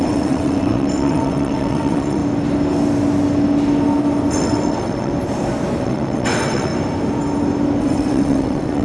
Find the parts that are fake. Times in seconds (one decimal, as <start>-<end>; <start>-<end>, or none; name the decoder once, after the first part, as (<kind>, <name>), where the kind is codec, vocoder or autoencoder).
0.0-2.2 (vocoder, WaveNeXt); 4.3-5.1; 5.8-6.7; 7.8-8.8